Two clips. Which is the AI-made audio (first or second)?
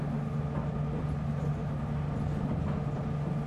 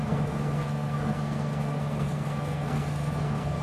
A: second